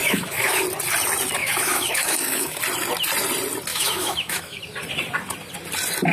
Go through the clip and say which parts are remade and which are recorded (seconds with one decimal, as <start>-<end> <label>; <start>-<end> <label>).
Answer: 0.0-0.6 remade; 0.6-1.4 recorded; 1.4-2.6 remade; 2.6-3.7 recorded; 3.7-4.6 remade; 4.6-6.1 recorded